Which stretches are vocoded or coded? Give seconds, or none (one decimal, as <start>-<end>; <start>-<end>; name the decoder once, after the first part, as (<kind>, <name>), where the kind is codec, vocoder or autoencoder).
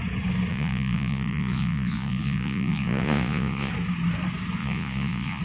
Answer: 0.5-3.7 (vocoder, Vocos); 4.6-5.4